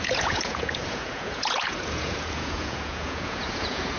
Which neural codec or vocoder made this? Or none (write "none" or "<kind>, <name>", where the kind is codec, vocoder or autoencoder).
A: vocoder, Vocos